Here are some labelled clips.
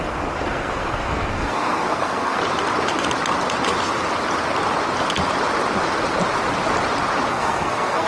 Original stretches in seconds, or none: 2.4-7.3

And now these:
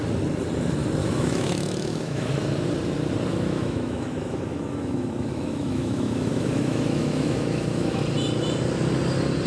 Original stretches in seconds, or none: 0.0-1.0; 2.3-3.3; 8.0-9.5

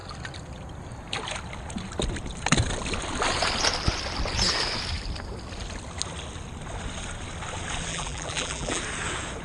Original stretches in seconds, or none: 0.0-7.9; 8.8-9.4

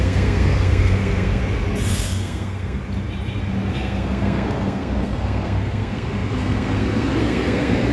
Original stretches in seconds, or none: 1.4-1.9; 2.8-3.7